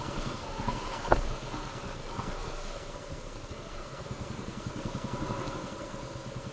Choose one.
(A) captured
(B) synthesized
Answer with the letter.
B